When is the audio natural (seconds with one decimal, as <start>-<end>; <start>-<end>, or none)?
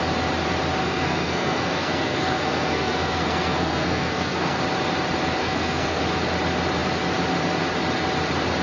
0.0-0.8; 4.6-5.4; 6.0-8.6